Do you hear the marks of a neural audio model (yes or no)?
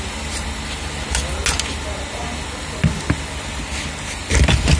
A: no